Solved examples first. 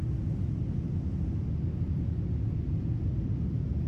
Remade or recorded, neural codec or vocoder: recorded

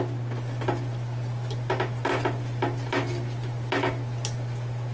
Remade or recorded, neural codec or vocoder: recorded